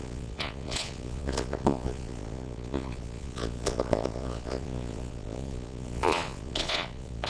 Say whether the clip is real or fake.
fake